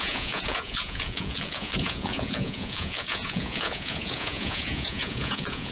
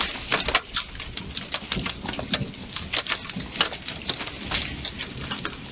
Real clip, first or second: second